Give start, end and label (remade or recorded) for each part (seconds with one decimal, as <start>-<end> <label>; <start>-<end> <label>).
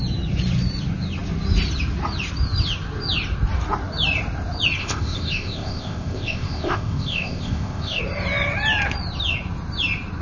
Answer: 0.0-4.8 recorded; 4.8-8.0 remade; 8.0-10.2 recorded